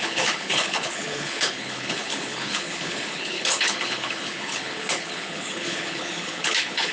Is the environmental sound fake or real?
fake